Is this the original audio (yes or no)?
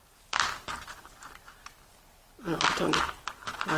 yes